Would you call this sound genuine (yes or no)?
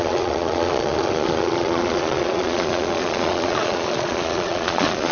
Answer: no